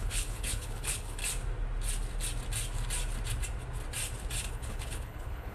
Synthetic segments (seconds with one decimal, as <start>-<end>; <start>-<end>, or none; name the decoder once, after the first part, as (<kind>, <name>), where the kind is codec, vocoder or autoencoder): 0.0-1.2 (codec, HILCodec); 4.5-5.5